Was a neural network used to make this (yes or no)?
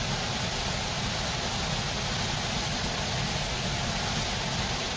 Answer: no